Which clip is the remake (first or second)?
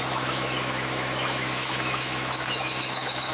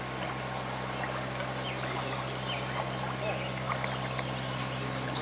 first